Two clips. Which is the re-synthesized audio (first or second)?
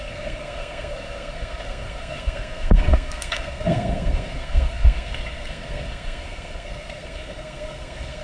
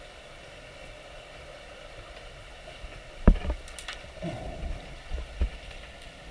first